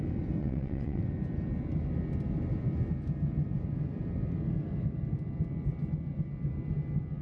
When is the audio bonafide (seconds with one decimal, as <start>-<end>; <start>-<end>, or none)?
0.0-0.4; 1.0-7.2